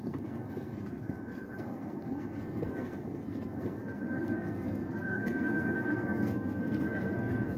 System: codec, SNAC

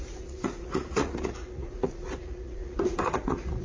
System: vocoder, Vocos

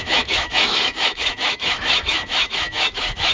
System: autoencoder, DAC-VAE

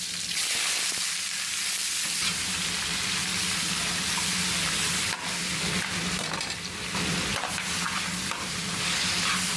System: none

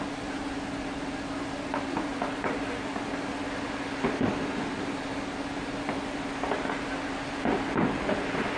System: none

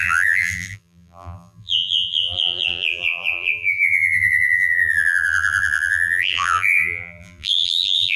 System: vocoder, BigVGAN v2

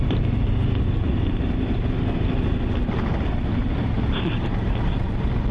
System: none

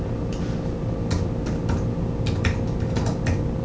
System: none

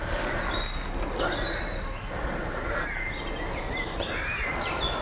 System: none